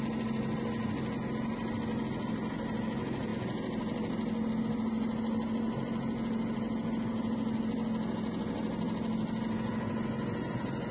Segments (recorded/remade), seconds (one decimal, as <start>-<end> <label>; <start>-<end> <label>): 0.0-10.9 recorded